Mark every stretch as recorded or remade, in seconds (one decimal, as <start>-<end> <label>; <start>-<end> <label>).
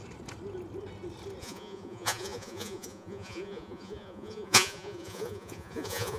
0.0-1.4 recorded; 1.4-6.2 remade